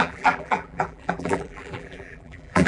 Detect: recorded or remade remade